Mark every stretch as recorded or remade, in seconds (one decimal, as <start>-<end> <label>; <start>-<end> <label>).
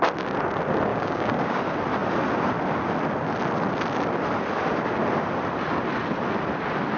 0.0-0.9 recorded; 0.9-1.6 remade; 1.6-7.0 recorded